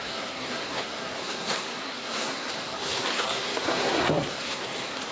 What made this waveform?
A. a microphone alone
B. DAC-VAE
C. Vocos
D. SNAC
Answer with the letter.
D